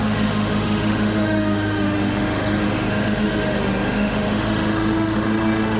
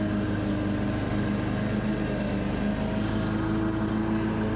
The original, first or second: second